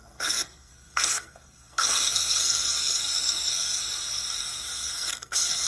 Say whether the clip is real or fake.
fake